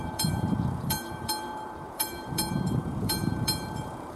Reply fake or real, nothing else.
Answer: fake